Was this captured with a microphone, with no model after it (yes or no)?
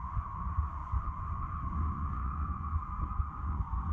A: no